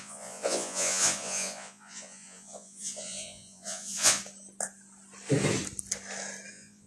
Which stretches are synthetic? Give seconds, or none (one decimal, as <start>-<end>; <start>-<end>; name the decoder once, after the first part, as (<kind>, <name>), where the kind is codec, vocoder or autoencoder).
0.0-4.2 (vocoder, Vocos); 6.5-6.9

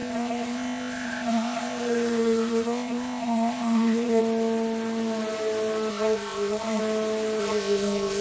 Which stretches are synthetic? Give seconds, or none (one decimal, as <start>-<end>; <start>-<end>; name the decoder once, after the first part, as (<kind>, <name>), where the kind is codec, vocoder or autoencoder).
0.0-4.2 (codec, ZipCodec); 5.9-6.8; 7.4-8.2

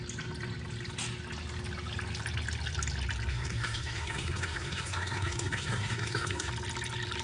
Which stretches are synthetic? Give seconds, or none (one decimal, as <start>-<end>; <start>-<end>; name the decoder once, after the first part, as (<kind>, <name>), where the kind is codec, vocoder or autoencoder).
3.3-6.5 (codec, SNAC)